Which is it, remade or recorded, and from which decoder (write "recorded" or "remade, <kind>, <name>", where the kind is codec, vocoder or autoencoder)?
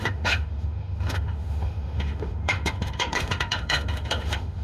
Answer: remade, autoencoder, DAC-VAE